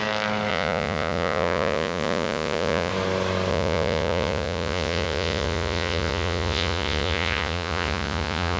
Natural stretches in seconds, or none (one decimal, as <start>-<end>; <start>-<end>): 0.0-0.5; 2.9-3.5